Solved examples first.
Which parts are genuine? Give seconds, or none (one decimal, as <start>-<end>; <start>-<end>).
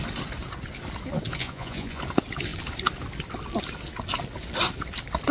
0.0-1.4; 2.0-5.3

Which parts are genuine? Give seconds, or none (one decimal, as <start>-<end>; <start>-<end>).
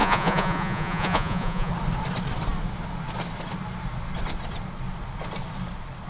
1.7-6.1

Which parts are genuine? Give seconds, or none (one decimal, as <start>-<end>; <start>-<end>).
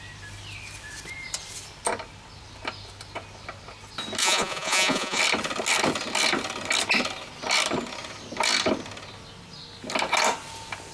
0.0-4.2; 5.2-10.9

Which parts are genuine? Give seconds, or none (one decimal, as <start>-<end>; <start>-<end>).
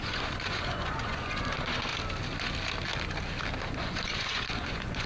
1.9-3.7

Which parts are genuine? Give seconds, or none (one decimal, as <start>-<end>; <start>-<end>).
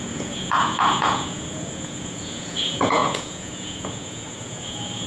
none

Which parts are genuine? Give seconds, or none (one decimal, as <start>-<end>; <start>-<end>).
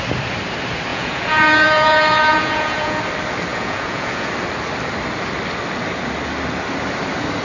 0.0-0.9; 3.0-3.5; 4.3-7.4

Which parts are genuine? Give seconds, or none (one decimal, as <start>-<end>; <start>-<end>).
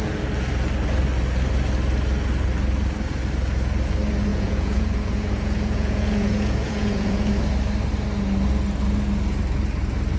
0.0-4.3; 7.3-10.2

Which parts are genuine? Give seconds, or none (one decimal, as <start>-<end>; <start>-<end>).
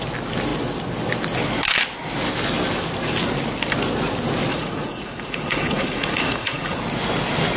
0.0-4.5; 6.8-7.6